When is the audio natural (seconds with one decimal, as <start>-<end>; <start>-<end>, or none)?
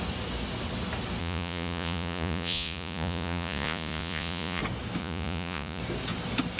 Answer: 0.0-1.2; 4.6-5.0; 5.8-6.6